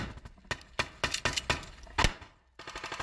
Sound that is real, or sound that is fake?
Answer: real